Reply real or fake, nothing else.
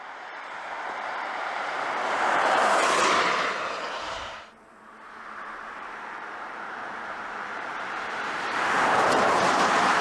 fake